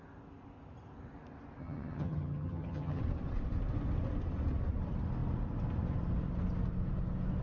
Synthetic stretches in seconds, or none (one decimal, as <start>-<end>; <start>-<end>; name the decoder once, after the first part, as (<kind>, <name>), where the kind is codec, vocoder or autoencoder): 1.6-3.0 (vocoder, HiFi-GAN)